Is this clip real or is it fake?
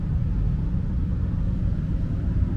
fake